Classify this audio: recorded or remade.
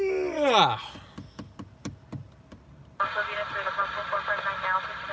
recorded